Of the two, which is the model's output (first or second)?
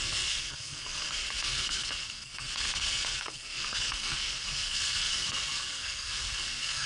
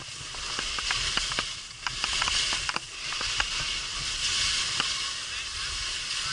first